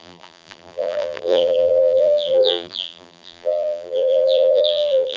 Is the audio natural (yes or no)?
no